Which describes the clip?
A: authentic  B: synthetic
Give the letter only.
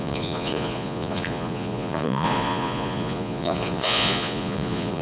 B